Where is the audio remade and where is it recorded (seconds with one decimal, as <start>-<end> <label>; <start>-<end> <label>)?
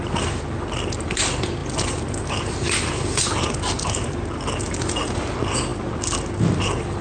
0.0-7.0 recorded